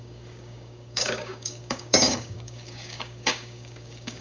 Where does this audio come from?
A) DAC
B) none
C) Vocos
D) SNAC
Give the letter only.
A